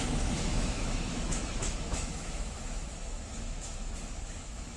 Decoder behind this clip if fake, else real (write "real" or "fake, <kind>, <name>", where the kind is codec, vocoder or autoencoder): fake, autoencoder, DAC-VAE